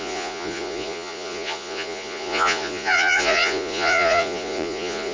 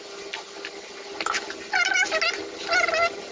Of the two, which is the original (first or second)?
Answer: second